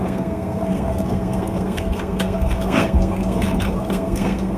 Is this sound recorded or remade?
remade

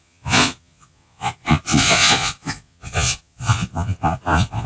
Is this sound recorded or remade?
remade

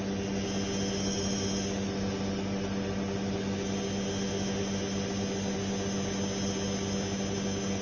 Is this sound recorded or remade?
recorded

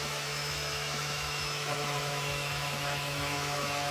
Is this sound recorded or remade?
remade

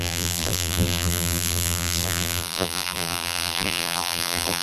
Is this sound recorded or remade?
remade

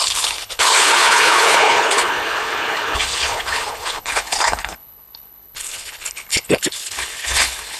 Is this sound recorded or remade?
remade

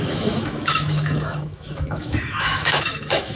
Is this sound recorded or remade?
remade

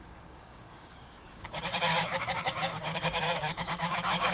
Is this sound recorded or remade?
remade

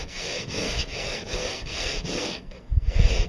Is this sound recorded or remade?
remade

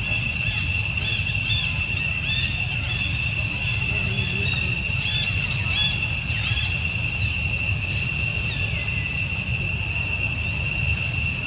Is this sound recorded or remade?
recorded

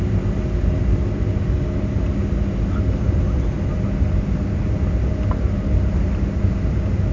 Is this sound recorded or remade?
recorded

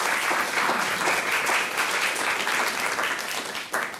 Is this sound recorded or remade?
remade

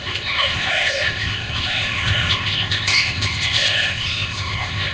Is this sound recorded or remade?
remade